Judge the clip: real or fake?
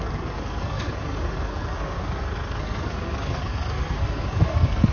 fake